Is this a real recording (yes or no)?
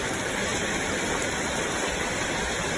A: yes